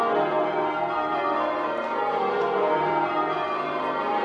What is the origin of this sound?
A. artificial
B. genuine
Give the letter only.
B